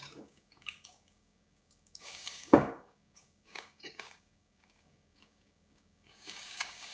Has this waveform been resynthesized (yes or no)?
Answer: yes